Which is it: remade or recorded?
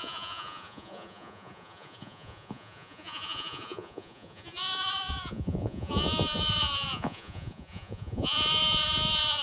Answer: remade